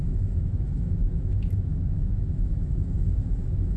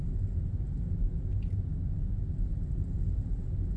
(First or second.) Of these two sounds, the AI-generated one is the first